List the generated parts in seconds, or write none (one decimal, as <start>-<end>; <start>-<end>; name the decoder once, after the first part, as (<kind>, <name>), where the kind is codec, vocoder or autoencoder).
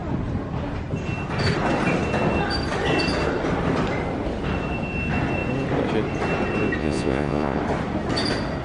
6.8-7.6 (vocoder, Vocos)